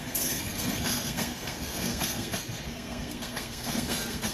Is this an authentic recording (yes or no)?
no